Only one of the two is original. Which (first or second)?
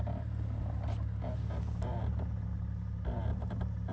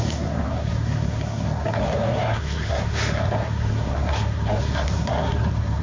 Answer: first